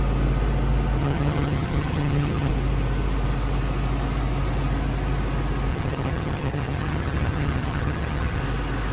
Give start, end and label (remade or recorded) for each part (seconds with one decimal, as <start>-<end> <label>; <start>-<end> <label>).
0.0-1.0 recorded; 1.0-2.5 remade; 2.5-5.7 recorded; 5.7-8.4 remade; 8.4-8.9 recorded